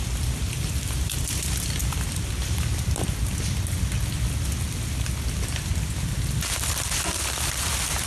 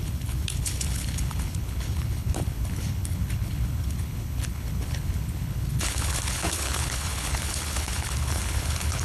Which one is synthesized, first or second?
second